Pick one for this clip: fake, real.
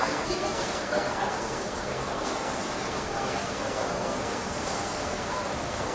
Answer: fake